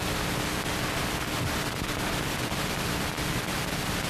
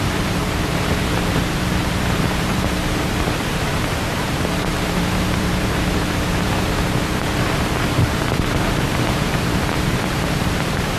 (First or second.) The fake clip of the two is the second